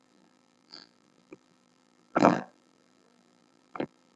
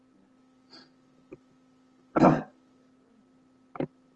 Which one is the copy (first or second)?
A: first